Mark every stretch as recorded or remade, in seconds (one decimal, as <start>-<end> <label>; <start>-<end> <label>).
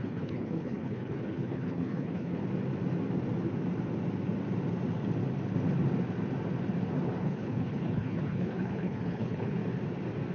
0.0-2.4 remade; 2.4-7.2 recorded; 7.2-9.6 remade; 9.6-10.3 recorded